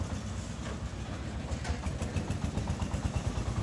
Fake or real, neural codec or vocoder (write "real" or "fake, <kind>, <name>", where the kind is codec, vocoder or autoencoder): real